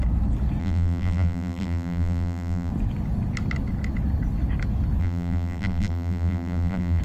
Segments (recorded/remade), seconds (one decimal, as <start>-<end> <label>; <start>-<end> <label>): 0.0-0.6 recorded; 0.6-2.7 remade; 2.7-5.0 recorded; 5.0-7.0 remade